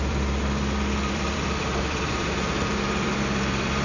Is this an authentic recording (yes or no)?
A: no